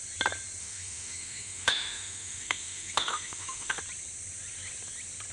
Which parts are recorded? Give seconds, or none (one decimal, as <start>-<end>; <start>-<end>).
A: 0.0-0.6; 3.8-5.3